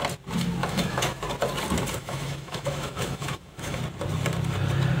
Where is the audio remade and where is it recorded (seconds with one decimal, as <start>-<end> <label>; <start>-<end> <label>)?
0.0-0.6 recorded; 0.6-1.2 remade; 1.2-2.0 recorded; 2.0-3.8 remade; 3.8-5.0 recorded